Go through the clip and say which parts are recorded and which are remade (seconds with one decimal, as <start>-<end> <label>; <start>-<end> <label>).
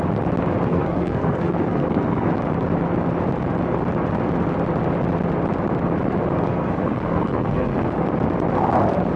0.0-0.7 recorded; 0.7-2.3 remade; 2.3-6.5 recorded; 6.5-7.8 remade; 7.8-9.2 recorded